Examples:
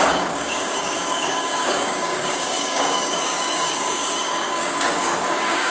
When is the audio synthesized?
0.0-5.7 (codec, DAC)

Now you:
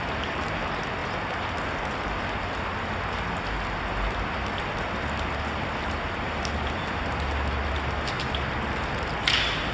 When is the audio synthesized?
none

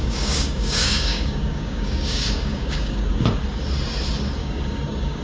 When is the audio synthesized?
0.0-3.1 (codec, DAC); 4.4-5.2

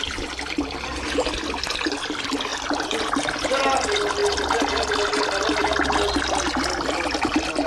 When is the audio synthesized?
2.5-3.5 (vocoder, BigVGAN v2)

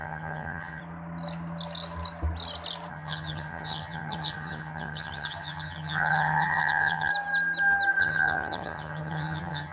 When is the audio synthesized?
0.0-0.8 (vocoder, HiFi-GAN); 2.9-7.1; 8.0-9.7

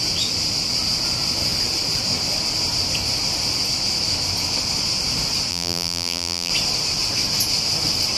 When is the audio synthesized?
5.5-6.5 (vocoder, BigVGAN v2)

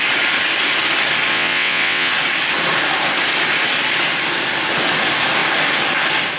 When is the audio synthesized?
1.3-2.1 (vocoder, WaveNeXt)